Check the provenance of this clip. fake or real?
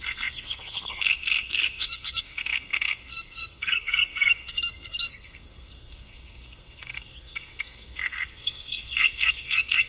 fake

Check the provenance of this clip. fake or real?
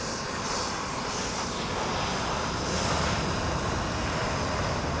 real